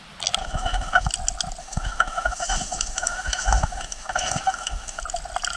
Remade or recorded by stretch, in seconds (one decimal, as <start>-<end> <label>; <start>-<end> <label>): 0.0-0.4 recorded; 0.4-1.1 remade; 1.1-1.6 recorded; 1.6-5.0 remade; 5.0-5.6 recorded